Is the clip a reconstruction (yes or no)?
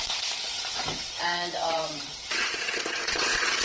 yes